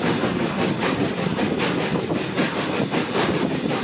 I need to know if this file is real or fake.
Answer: real